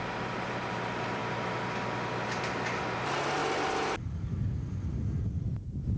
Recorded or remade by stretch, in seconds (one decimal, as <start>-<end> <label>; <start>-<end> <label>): 0.0-1.2 remade; 1.2-2.4 recorded; 2.4-3.4 remade; 3.4-5.5 recorded; 5.5-6.0 remade